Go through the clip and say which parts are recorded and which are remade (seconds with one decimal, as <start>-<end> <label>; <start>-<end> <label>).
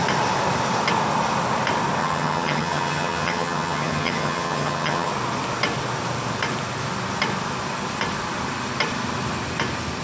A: 0.0-2.0 recorded; 2.0-5.1 remade; 5.1-10.0 recorded